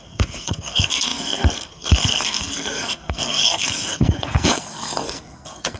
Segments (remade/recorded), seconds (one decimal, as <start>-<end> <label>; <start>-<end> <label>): 0.0-5.8 remade